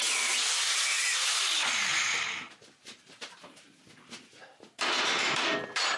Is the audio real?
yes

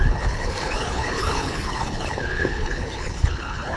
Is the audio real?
no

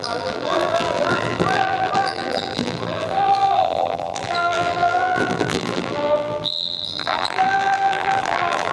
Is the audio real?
no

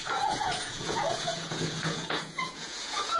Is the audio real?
no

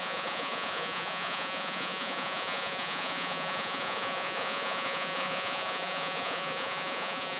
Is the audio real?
no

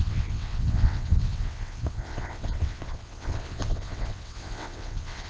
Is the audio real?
no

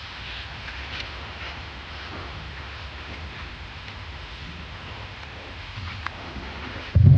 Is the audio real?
no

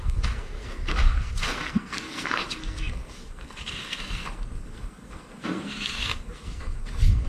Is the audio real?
no